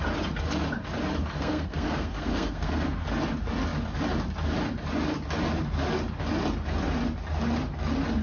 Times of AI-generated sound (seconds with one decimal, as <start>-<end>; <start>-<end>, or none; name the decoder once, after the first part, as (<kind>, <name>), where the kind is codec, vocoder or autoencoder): 1.2-3.0 (codec, SNAC)